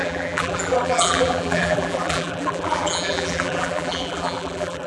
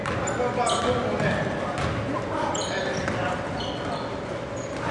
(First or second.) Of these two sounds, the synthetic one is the first